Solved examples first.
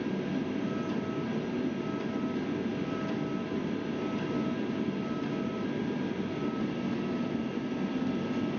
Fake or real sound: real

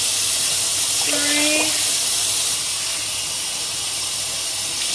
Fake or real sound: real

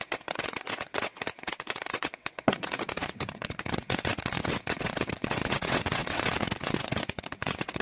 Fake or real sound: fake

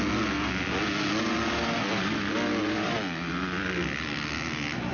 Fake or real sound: real